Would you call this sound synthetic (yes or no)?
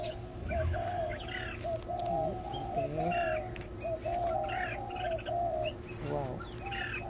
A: no